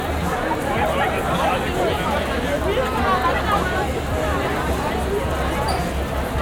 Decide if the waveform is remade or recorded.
recorded